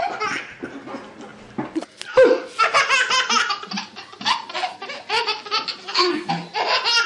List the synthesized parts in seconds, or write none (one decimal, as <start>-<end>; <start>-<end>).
5.8-6.3